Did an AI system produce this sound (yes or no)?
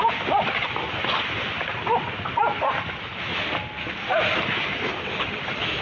no